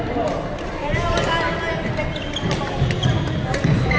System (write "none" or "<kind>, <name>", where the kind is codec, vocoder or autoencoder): none